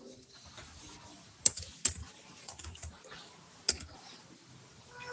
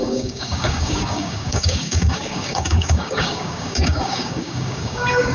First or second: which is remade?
second